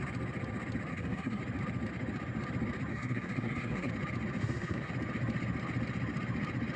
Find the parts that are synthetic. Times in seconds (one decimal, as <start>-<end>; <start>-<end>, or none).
0.9-1.4; 2.9-3.9; 4.4-4.9